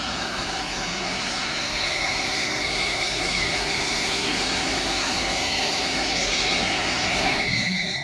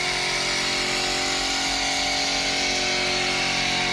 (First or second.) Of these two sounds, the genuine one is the second